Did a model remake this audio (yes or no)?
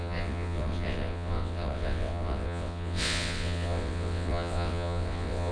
yes